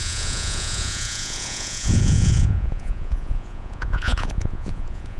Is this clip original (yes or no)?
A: no